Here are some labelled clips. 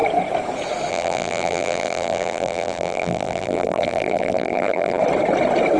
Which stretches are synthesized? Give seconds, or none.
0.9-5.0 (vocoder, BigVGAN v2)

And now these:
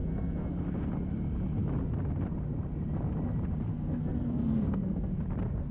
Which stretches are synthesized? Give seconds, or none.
0.0-0.5 (codec, SNAC); 3.7-5.1

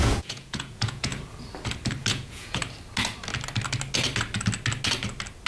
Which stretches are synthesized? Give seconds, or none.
0.0-1.1 (vocoder, Vocos); 2.1-2.6

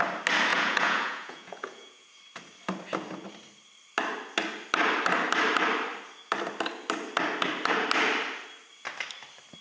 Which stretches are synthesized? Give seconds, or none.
0.5-2.2 (vocoder, Vocos)

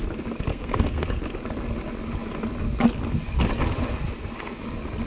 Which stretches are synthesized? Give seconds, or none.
0.5-1.2 (codec, SNAC)